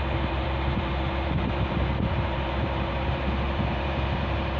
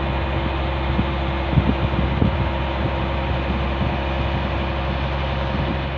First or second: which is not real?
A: first